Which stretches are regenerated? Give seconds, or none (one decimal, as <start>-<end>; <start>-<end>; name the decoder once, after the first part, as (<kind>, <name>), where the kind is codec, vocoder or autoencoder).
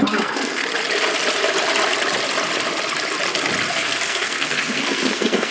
0.0-0.6 (codec, SNAC); 3.7-5.5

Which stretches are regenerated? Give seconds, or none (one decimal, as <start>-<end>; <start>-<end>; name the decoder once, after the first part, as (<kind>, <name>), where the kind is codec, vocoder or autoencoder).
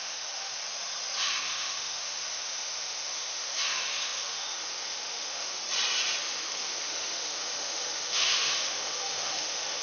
0.0-0.6 (autoencoder, DAC-VAE); 1.2-5.6; 6.2-9.8